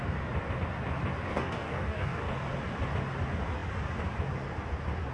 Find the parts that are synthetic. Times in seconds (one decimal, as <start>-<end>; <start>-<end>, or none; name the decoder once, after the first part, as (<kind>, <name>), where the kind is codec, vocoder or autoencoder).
1.3-2.2 (codec, DAC)